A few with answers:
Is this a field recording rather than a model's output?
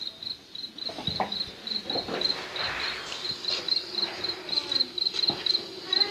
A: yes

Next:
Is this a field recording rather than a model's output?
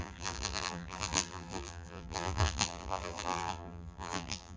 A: no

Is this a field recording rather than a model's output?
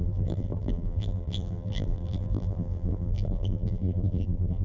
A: no